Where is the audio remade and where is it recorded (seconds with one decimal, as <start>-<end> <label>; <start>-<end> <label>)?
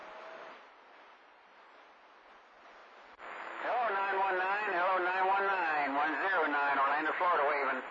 0.0-2.8 remade; 2.8-6.9 recorded; 6.9-7.9 remade